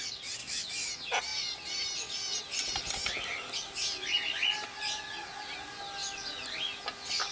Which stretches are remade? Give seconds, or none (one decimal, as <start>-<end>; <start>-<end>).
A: 0.4-0.9

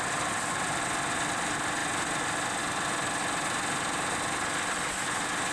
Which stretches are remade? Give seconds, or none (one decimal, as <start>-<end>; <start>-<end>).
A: none

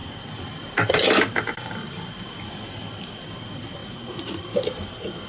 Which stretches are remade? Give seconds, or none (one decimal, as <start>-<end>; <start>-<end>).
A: 3.8-4.4

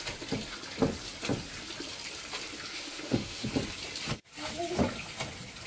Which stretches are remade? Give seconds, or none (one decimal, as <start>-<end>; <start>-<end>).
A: 2.7-3.5